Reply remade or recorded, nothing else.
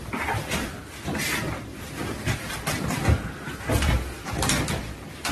recorded